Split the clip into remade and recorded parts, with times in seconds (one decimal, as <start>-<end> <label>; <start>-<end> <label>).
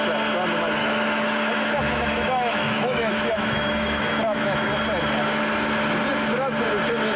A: 0.0-0.8 recorded; 0.8-4.7 remade; 4.7-7.2 recorded